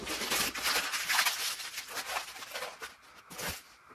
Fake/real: real